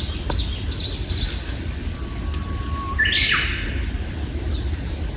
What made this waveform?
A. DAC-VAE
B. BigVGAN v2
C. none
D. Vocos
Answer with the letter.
C